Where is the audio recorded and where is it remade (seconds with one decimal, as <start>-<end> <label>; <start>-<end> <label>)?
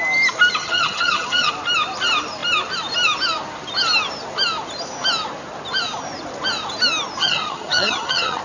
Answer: 0.0-0.6 recorded; 0.6-1.5 remade; 1.5-7.2 recorded; 7.2-8.4 remade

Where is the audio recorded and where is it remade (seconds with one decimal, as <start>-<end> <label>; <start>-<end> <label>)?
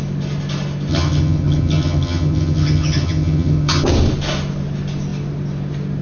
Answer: 0.0-0.9 recorded; 0.9-3.9 remade; 3.9-6.0 recorded